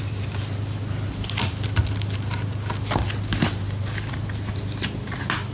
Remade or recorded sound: recorded